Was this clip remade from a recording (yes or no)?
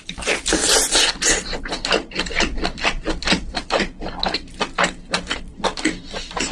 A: no